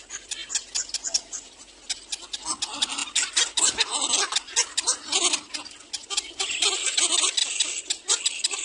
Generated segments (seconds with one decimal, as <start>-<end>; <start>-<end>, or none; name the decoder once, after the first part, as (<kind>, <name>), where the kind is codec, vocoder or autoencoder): none